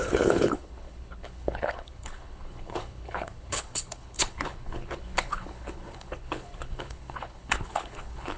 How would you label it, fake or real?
fake